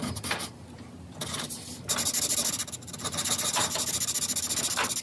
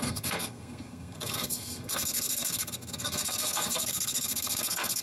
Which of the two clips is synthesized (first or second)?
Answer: second